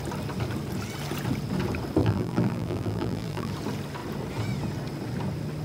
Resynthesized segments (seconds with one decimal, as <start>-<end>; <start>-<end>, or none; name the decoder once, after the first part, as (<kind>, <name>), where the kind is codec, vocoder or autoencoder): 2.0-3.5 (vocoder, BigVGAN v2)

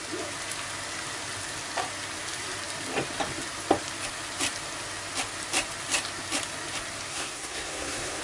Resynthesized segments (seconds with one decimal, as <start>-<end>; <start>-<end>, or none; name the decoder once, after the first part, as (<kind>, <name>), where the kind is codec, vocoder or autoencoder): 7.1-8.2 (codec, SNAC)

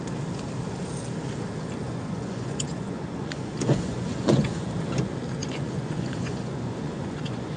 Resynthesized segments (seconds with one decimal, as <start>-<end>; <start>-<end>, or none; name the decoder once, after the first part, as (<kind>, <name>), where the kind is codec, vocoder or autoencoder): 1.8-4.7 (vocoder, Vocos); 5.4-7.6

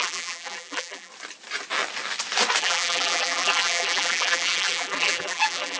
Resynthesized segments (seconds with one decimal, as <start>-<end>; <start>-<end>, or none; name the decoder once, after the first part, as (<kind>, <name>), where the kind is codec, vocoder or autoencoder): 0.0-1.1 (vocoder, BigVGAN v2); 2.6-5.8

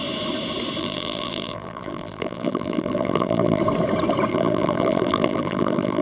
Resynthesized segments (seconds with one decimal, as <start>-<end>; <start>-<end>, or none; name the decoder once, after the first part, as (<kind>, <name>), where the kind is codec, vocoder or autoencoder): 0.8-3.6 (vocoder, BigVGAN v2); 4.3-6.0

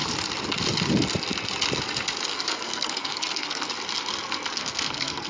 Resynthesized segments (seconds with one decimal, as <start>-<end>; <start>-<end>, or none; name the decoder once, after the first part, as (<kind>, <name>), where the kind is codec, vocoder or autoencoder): 2.3-3.7 (codec, SNAC); 4.5-5.3

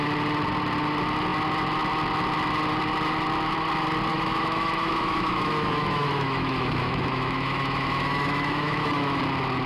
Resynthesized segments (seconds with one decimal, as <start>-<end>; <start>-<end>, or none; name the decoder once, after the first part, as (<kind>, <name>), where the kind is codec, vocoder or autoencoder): 4.1-9.2 (autoencoder, DAC-VAE)

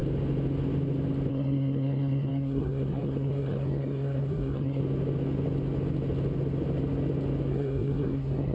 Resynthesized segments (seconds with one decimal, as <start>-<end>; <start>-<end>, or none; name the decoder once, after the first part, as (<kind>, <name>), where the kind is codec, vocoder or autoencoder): 1.3-4.8 (codec, SNAC); 7.5-8.5